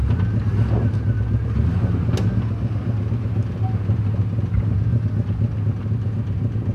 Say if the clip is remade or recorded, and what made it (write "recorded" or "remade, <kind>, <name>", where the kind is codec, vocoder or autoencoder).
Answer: recorded